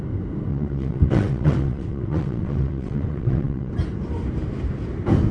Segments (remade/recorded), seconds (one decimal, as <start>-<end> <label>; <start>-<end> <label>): 0.0-0.5 recorded; 0.5-3.7 remade; 3.7-5.3 recorded